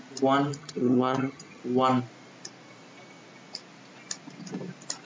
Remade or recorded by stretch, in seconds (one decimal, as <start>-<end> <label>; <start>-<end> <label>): 0.0-0.5 recorded; 0.5-1.6 remade; 1.6-5.0 recorded